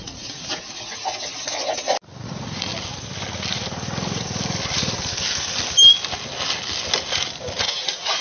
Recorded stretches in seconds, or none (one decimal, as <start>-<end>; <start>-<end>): 1.1-2.2; 2.7-7.6